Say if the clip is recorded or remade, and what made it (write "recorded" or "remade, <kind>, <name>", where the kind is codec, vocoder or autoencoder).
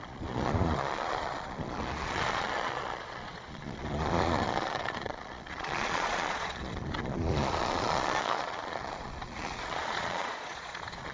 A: remade, vocoder, Vocos